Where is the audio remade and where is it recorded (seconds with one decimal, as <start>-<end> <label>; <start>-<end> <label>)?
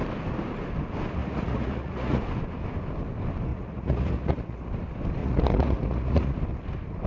0.0-1.2 recorded; 1.2-2.2 remade; 2.2-3.5 recorded; 3.5-4.7 remade; 4.7-5.2 recorded; 5.2-6.4 remade; 6.4-7.1 recorded